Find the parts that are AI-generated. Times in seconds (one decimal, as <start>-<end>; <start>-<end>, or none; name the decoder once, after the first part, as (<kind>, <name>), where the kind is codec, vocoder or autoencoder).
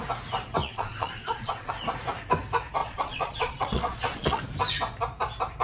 0.6-1.7 (vocoder, Vocos); 2.8-4.4